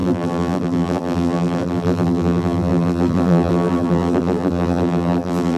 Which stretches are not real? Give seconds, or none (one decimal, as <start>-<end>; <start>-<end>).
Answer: 0.0-5.6